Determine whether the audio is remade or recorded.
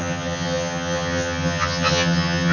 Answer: remade